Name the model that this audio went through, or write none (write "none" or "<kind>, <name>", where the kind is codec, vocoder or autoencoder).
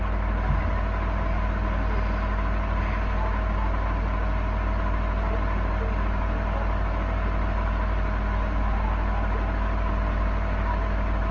none